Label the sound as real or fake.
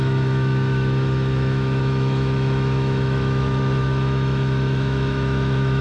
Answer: fake